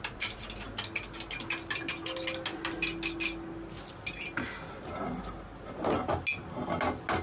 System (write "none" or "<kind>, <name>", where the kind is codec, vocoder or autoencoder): none